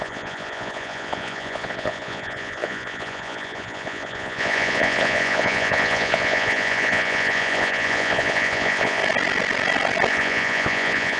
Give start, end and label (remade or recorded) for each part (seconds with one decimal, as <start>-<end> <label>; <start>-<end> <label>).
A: 0.0-9.0 remade; 9.0-10.1 recorded; 10.1-11.2 remade